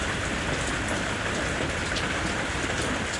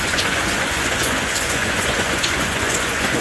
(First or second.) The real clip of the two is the first